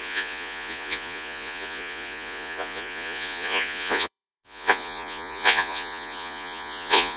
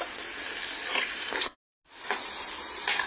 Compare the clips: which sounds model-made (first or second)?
first